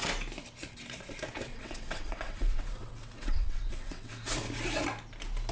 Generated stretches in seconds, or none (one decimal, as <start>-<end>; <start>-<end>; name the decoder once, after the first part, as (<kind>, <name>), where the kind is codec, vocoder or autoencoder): 1.5-4.1 (vocoder, WaveNeXt)